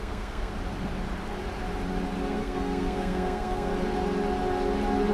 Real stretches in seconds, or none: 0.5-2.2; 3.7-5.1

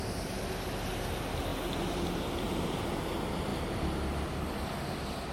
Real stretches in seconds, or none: 0.0-5.3

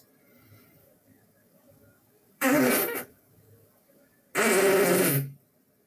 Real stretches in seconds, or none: 0.0-0.8; 4.3-5.9